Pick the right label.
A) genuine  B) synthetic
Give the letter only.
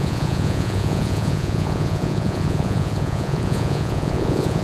B